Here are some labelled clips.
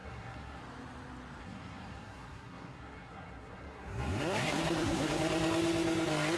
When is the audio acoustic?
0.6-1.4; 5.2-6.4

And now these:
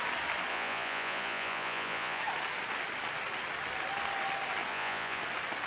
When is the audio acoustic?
0.0-0.5; 2.2-4.7; 5.2-5.7

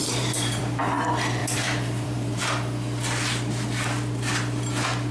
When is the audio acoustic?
0.6-1.4; 2.4-5.1

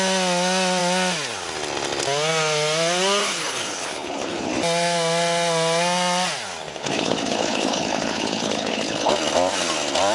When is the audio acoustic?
0.0-3.2; 4.5-6.6; 9.1-10.1

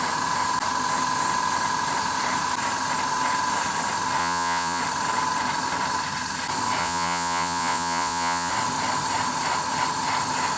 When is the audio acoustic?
0.0-4.2; 4.8-6.8; 8.5-10.6